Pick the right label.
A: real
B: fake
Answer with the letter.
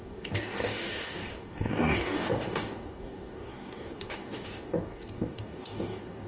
B